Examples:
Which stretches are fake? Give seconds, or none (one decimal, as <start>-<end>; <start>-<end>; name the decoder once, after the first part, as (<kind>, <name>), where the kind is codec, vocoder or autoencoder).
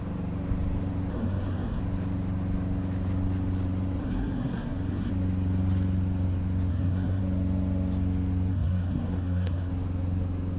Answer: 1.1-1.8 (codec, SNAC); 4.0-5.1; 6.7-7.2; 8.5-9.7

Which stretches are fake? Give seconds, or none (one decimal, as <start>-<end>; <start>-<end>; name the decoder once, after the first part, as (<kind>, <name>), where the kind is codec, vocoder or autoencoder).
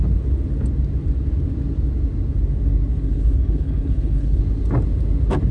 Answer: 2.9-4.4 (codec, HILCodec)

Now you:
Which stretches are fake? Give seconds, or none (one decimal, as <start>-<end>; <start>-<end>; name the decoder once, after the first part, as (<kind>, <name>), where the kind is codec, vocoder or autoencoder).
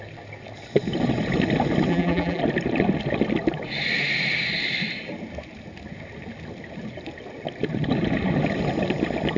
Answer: 1.9-2.4 (vocoder, BigVGAN v2)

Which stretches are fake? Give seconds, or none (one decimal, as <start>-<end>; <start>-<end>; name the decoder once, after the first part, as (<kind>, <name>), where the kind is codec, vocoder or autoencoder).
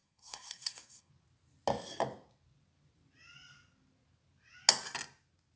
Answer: 0.0-1.1 (codec, SNAC)